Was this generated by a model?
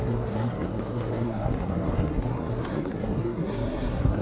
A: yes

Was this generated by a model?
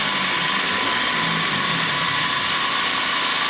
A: no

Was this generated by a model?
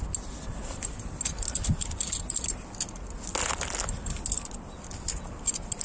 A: no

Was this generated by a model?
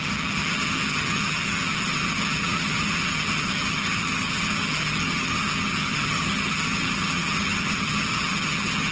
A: yes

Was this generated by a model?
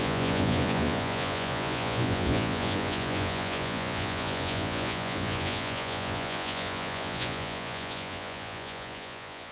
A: yes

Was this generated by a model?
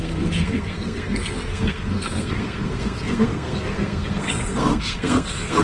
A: yes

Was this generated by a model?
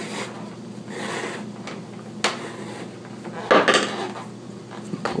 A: no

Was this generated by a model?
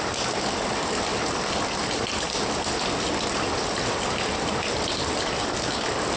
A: no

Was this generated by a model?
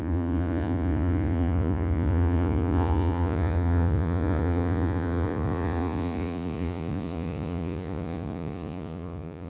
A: yes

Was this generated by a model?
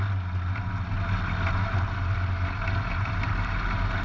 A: no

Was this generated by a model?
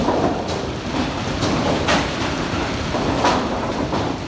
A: yes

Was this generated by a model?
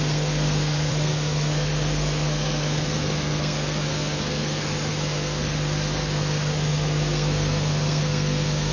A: yes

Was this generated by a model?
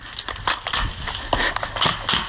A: no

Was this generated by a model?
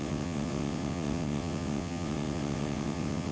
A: yes